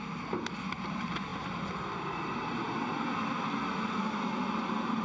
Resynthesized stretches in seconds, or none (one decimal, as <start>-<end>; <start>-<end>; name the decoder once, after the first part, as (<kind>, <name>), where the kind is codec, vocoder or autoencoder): none